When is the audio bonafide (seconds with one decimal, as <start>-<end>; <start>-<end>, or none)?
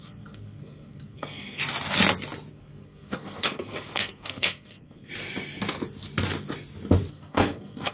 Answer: 1.6-2.5; 5.1-7.1